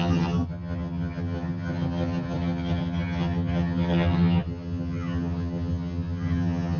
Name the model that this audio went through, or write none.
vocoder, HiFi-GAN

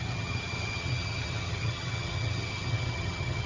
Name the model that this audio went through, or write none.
vocoder, HiFi-GAN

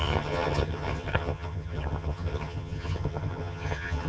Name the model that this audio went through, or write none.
vocoder, HiFi-GAN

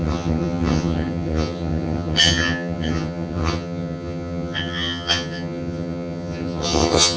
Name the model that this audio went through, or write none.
vocoder, HiFi-GAN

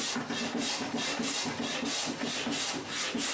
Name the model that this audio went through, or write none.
none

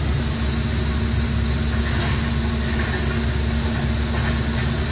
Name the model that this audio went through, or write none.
none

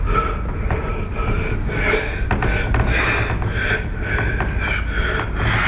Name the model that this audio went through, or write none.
none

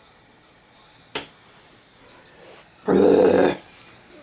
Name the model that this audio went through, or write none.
none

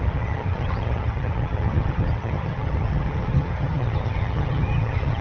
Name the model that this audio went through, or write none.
vocoder, HiFi-GAN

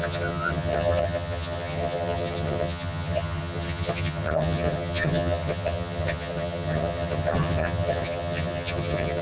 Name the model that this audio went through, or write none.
vocoder, HiFi-GAN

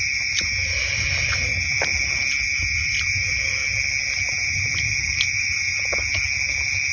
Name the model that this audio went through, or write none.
none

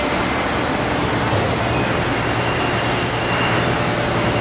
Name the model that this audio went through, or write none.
none